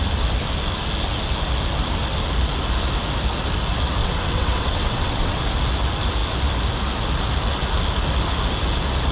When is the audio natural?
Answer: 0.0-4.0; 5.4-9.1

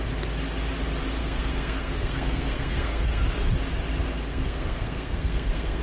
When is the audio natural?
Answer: 0.0-1.2; 3.2-4.3

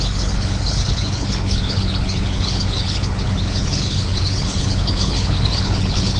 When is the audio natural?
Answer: none

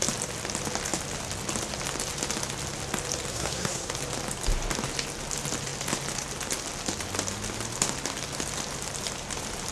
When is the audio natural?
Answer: 0.0-3.3; 3.9-9.7

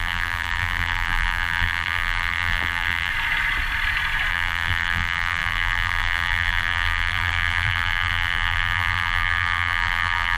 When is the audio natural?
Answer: 3.1-4.3